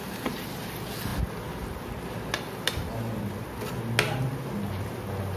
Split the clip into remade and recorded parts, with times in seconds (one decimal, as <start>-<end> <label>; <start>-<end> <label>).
0.0-0.5 remade; 0.5-5.4 recorded